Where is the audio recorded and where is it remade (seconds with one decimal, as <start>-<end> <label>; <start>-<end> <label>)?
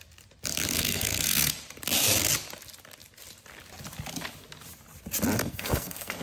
0.0-0.7 recorded; 0.7-1.5 remade; 1.5-5.4 recorded; 5.4-6.2 remade